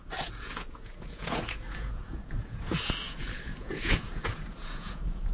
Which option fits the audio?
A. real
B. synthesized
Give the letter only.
B